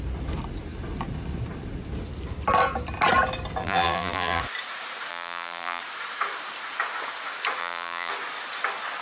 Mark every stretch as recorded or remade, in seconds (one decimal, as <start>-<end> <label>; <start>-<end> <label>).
0.0-3.6 recorded; 3.6-4.4 remade; 4.4-5.1 recorded; 5.1-5.8 remade; 5.8-7.6 recorded; 7.6-8.1 remade; 8.1-9.0 recorded